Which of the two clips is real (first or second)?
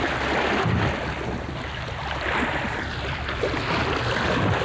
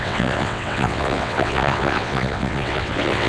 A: first